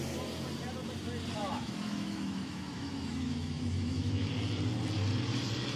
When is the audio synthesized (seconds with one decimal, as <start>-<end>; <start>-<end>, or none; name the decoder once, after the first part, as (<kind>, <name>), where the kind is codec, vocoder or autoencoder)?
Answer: 1.4-4.3 (autoencoder, DAC-VAE)